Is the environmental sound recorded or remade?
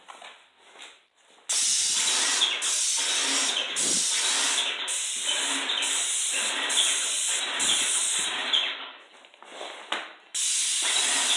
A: recorded